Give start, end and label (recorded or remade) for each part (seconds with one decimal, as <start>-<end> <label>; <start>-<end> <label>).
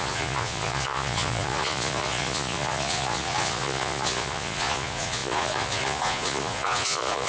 0.0-7.3 remade